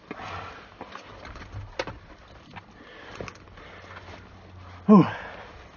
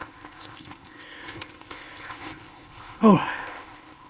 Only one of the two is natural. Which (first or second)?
first